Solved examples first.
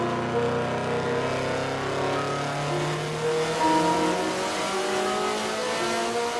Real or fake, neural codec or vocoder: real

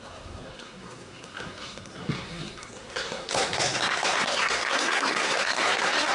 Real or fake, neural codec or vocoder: fake, codec, SNAC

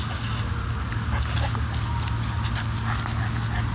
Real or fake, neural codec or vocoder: real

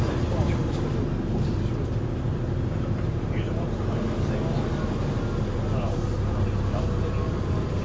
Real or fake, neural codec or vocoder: real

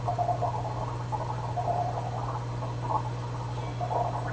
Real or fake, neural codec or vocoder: real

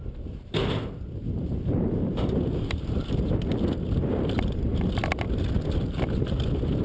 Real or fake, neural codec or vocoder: real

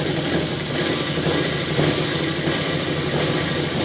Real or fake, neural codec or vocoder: real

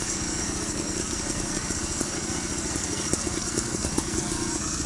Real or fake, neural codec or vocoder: fake, codec, SNAC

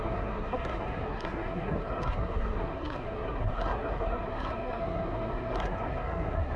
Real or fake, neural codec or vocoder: fake, codec, SNAC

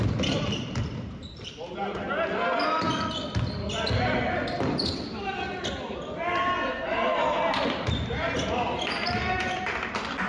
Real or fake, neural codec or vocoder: real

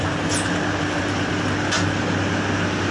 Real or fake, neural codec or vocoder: real